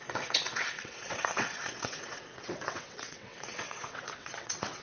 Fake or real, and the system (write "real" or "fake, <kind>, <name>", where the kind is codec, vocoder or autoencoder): fake, vocoder, WaveNeXt